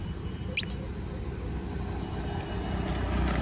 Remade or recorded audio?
recorded